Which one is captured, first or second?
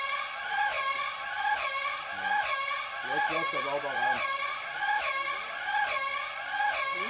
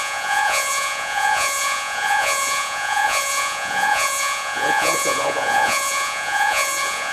first